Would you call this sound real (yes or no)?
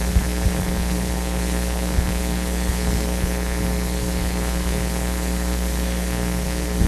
no